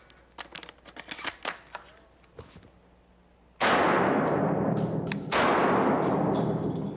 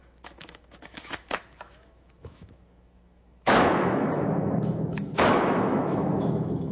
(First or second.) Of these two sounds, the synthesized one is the second